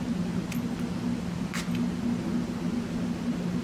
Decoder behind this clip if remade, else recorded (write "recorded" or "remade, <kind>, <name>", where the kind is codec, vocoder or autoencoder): remade, vocoder, BigVGAN v2